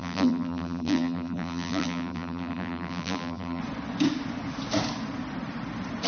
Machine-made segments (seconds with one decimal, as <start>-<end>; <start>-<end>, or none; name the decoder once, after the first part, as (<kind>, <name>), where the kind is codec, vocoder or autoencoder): 0.0-3.6 (vocoder, BigVGAN v2)